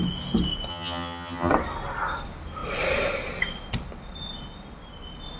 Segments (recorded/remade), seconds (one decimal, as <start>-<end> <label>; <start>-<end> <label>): 0.0-0.7 recorded; 0.7-1.5 remade; 1.5-5.4 recorded